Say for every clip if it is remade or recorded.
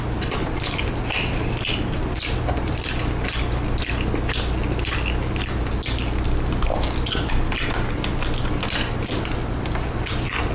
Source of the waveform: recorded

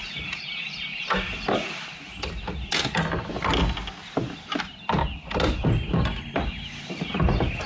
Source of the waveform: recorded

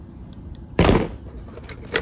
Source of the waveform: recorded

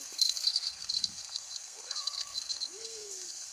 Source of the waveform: remade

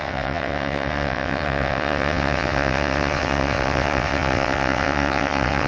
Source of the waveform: remade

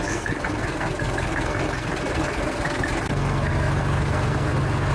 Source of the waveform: remade